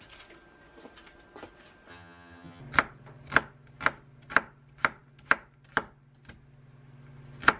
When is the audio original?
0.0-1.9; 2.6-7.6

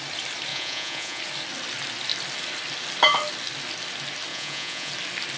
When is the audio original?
0.0-0.5; 1.2-4.3; 4.9-5.4

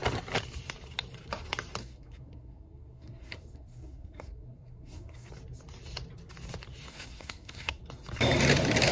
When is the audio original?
0.0-1.8; 5.3-6.9; 7.8-8.9

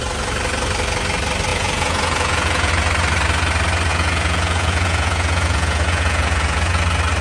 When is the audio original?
0.0-1.5; 2.7-3.9; 6.8-7.2

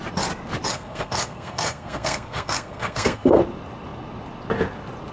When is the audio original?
0.0-0.7; 3.4-5.1